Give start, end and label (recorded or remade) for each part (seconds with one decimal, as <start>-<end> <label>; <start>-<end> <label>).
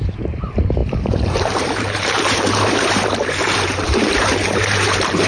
0.0-5.3 remade